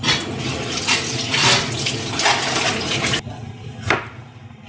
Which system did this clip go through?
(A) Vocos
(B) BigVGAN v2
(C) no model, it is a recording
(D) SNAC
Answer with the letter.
C